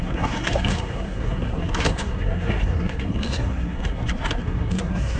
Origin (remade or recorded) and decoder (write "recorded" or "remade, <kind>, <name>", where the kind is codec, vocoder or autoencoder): remade, codec, SNAC